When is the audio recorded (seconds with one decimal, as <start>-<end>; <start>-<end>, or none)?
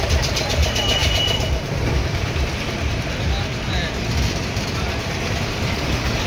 none